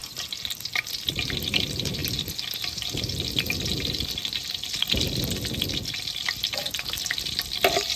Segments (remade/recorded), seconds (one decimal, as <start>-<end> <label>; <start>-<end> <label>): 0.0-8.0 recorded

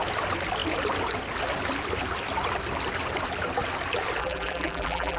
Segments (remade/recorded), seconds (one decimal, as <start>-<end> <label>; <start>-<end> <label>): 0.0-4.2 recorded; 4.2-5.2 remade

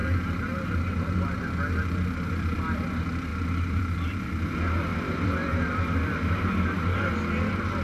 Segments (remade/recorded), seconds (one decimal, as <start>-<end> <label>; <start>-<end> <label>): 0.0-4.9 recorded; 4.9-7.1 remade; 7.1-7.8 recorded

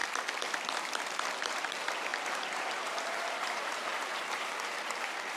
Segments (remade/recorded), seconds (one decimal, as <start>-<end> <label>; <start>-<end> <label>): 0.0-1.0 recorded; 1.0-5.4 remade